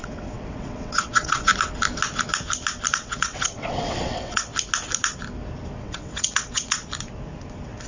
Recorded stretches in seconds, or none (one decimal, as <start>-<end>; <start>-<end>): 1.5-2.9; 4.5-5.8; 6.8-7.9